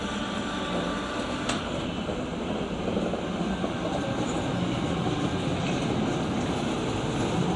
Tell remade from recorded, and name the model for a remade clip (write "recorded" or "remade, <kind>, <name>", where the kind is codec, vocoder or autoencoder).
recorded